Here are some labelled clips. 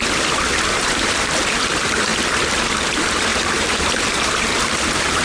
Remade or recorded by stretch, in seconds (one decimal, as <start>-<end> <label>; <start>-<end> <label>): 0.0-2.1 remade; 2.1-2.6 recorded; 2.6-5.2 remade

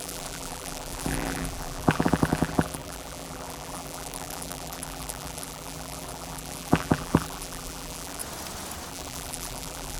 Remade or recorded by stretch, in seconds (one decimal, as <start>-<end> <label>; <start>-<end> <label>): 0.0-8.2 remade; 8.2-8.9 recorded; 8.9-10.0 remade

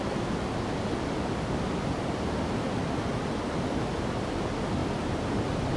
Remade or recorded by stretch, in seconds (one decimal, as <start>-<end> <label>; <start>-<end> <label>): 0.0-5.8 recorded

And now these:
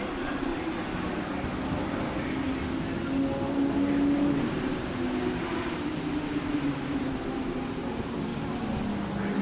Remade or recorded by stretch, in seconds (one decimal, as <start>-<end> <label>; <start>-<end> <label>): 0.0-0.5 remade; 0.5-5.4 recorded; 5.4-8.3 remade; 8.3-9.4 recorded